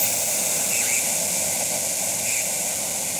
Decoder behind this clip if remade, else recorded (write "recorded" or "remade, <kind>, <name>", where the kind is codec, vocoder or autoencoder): recorded